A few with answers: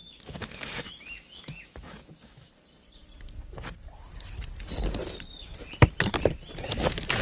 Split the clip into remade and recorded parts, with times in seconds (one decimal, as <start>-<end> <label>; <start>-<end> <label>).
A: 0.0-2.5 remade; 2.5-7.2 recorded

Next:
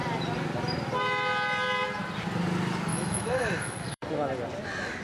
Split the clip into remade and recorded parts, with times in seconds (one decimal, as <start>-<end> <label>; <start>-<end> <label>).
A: 0.0-2.9 recorded; 2.9-4.4 remade; 4.4-5.0 recorded

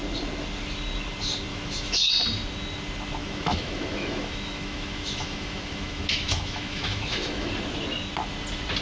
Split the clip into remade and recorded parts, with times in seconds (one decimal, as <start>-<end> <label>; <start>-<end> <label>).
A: 0.0-1.5 recorded; 1.5-2.1 remade; 2.1-3.2 recorded; 3.2-7.5 remade; 7.5-8.8 recorded